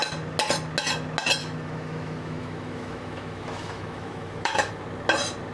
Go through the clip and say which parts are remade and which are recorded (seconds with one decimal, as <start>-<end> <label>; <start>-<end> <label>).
0.0-1.4 recorded; 1.4-4.7 remade; 4.7-5.5 recorded